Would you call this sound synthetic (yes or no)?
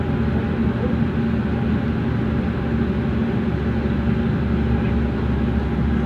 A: no